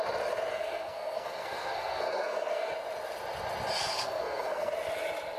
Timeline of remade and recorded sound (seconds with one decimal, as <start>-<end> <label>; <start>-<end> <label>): 0.0-0.5 recorded; 0.5-2.7 remade; 2.7-3.8 recorded; 3.8-4.7 remade; 4.7-5.4 recorded